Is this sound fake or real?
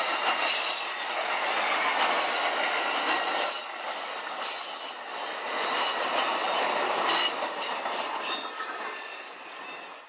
real